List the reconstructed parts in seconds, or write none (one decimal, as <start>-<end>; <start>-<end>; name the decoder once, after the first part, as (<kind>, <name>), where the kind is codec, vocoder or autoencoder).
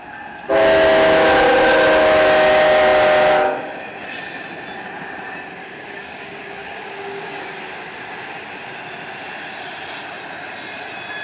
5.6-7.4 (codec, DAC)